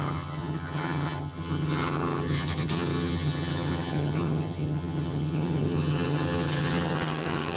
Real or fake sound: fake